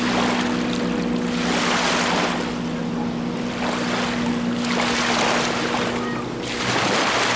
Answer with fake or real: real